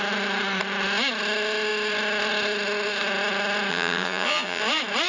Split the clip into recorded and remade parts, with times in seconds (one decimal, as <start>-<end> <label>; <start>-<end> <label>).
0.0-3.7 recorded; 3.7-4.6 remade; 4.6-5.1 recorded

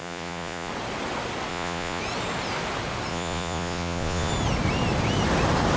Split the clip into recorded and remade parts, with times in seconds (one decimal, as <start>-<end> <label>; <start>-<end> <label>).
0.0-0.7 remade; 0.7-1.5 recorded; 1.5-2.0 remade; 2.0-3.1 recorded; 3.1-4.3 remade; 4.3-5.8 recorded

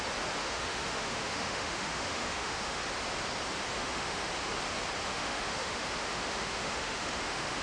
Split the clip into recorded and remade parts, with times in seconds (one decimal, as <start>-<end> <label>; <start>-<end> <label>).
0.0-0.4 recorded; 0.4-2.8 remade; 2.8-3.8 recorded; 3.8-4.3 remade; 4.3-5.1 recorded; 5.1-7.6 remade

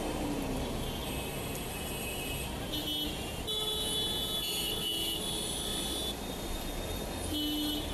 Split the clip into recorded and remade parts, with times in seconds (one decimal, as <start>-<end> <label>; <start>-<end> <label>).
0.0-7.9 recorded

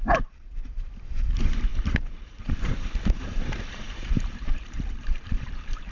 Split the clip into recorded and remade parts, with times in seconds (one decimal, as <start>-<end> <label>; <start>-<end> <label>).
0.0-5.9 remade